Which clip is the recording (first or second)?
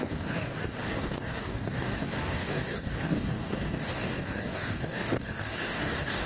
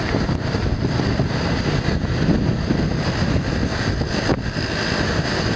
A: second